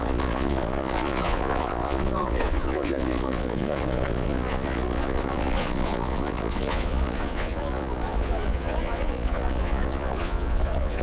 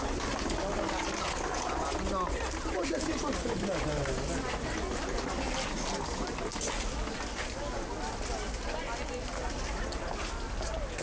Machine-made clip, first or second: first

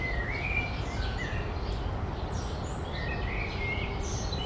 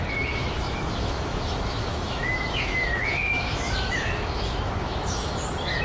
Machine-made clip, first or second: second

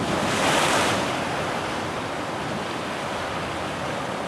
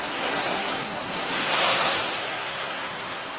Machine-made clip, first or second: second